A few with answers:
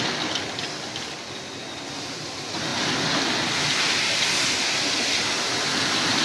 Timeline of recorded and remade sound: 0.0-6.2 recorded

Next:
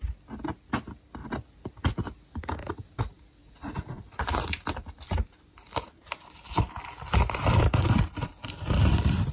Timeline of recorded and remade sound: 0.0-3.4 recorded; 3.4-4.6 remade; 4.6-9.3 recorded